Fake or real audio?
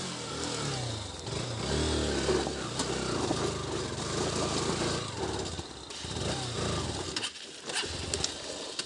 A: real